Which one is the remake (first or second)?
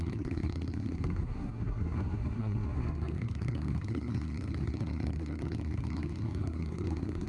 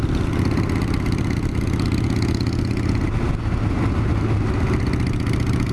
first